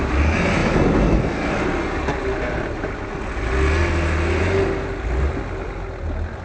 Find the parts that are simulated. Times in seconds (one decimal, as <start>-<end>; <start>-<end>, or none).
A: none